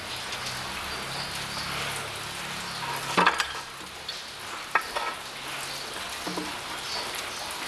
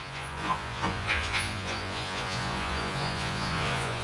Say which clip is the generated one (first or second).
second